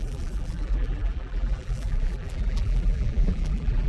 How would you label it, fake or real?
fake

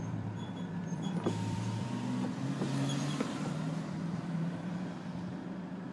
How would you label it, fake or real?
fake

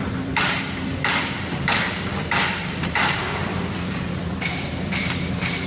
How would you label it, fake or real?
fake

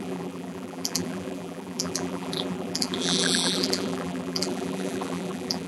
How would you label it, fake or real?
fake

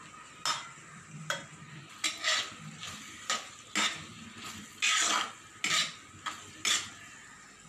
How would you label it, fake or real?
real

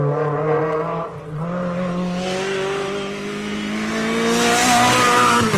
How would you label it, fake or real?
real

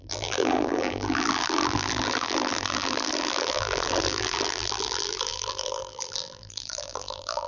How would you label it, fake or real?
fake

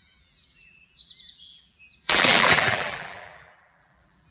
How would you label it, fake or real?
fake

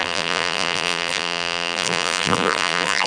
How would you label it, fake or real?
fake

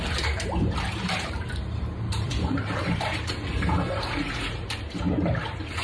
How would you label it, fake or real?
fake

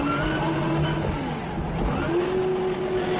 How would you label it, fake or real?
real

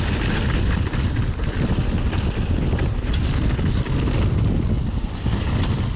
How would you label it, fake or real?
real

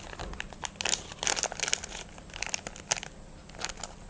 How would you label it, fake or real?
real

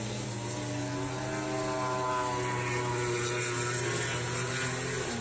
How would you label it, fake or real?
real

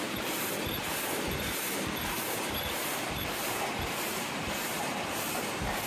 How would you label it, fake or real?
fake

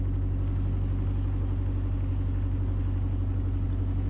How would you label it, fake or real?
real